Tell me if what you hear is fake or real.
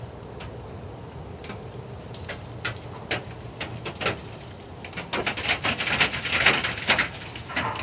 real